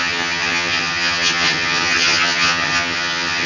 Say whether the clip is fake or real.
fake